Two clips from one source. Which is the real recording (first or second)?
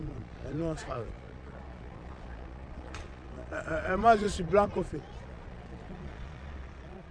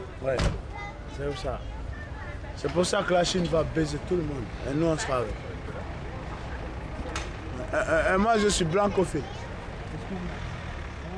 second